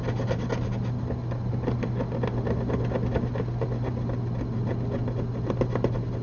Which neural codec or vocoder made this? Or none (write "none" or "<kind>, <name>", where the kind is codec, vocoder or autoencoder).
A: none